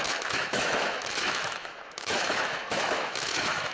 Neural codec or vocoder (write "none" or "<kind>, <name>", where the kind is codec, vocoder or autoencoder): autoencoder, DAC-VAE